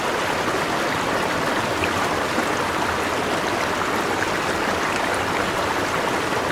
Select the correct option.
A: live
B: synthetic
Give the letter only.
A